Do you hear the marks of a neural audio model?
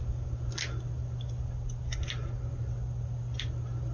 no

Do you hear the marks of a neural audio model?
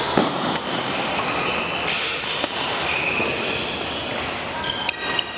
no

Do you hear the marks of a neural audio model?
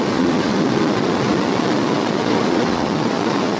yes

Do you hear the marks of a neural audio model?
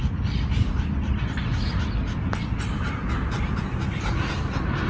no